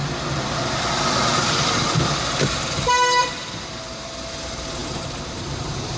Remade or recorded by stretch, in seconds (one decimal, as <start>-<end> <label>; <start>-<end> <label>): 0.0-6.0 recorded